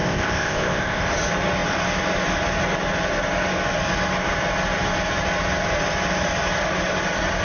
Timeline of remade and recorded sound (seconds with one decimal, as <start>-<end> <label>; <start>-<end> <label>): 0.0-1.0 remade; 1.0-7.4 recorded